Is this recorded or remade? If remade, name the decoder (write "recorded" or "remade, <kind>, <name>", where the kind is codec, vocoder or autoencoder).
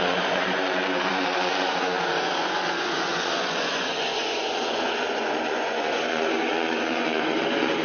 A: remade, vocoder, Vocos